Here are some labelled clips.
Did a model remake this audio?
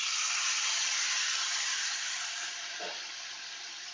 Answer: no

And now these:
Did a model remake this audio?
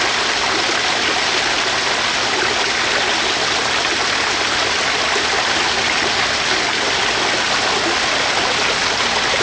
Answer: no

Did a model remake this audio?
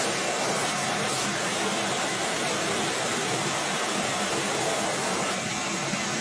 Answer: no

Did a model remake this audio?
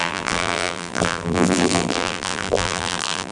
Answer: yes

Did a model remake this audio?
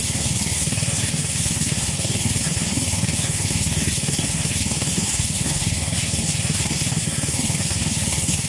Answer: yes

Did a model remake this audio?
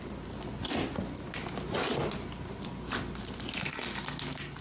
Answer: no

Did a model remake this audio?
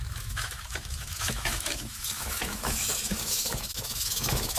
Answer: yes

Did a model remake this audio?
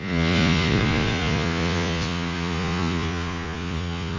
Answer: yes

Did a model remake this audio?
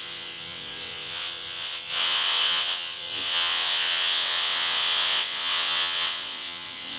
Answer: yes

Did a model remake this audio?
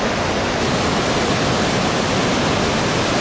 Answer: no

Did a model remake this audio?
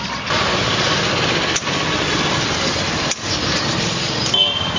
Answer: no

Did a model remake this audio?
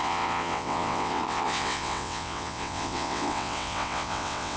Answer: yes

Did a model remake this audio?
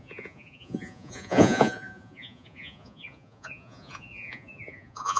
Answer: yes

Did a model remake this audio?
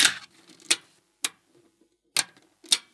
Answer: no